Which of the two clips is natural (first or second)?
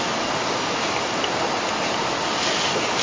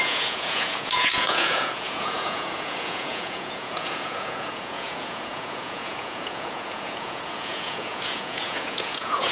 first